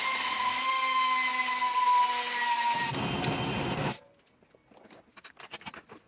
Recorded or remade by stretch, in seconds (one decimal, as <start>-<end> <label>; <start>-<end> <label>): 0.0-6.1 recorded